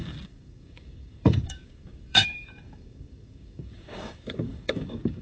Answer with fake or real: fake